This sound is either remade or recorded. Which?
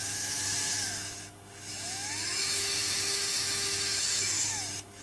remade